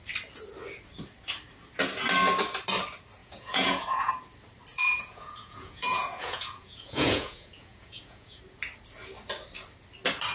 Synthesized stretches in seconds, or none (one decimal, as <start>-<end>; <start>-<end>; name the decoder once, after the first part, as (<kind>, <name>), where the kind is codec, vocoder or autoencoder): 3.2-4.1 (vocoder, Vocos); 4.7-8.4